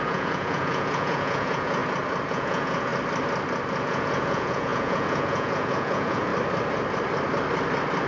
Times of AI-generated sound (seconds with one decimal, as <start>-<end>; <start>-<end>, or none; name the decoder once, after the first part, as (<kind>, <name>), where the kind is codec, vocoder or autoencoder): 0.0-1.8 (vocoder, Vocos); 2.3-2.9; 3.8-6.3